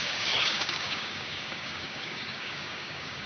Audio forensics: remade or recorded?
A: remade